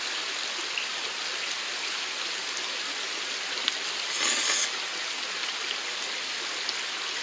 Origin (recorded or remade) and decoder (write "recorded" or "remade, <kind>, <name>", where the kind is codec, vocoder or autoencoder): recorded